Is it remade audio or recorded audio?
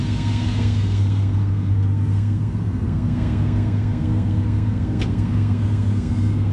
remade